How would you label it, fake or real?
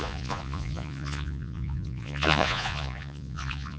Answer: fake